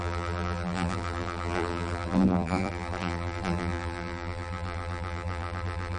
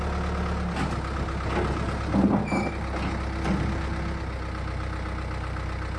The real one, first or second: second